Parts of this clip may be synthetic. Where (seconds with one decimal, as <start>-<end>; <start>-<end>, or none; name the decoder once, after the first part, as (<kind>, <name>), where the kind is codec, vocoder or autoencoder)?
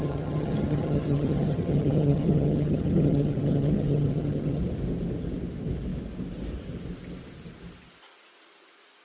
0.0-4.6 (vocoder, HiFi-GAN)